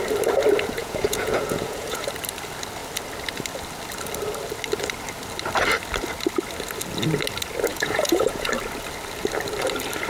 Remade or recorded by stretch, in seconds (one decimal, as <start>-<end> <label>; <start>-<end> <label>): 0.0-0.8 recorded; 0.8-2.1 remade; 2.1-7.7 recorded; 7.7-8.5 remade; 8.5-10.1 recorded